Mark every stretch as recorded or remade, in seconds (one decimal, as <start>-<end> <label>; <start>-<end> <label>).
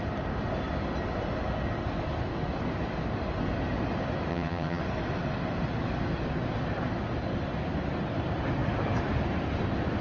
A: 0.0-4.3 recorded; 4.3-4.8 remade; 4.8-10.0 recorded